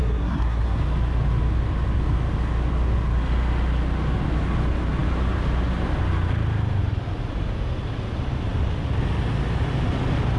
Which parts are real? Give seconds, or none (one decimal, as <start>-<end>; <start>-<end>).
0.8-10.4